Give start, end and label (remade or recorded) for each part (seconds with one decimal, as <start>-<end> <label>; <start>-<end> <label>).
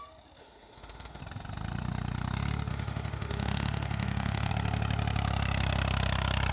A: 0.0-0.4 recorded; 0.4-1.2 remade; 1.2-2.7 recorded; 2.7-4.5 remade; 4.5-6.5 recorded